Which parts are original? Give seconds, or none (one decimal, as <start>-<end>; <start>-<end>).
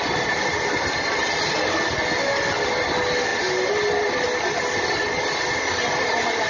0.0-6.5